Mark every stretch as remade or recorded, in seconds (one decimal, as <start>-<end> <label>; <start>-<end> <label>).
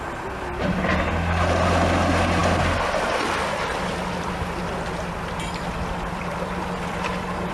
0.0-7.5 recorded